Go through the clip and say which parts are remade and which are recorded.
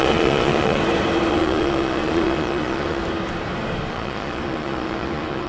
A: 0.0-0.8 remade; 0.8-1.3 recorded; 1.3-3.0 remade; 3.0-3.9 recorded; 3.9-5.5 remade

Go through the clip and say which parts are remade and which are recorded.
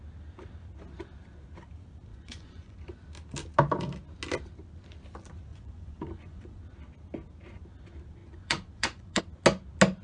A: 0.0-2.1 recorded; 2.1-2.8 remade; 2.8-5.5 recorded; 5.5-6.6 remade; 6.6-8.2 recorded; 8.2-9.2 remade; 9.2-10.0 recorded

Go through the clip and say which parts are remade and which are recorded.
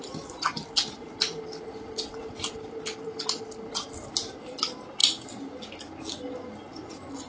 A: 0.0-7.3 recorded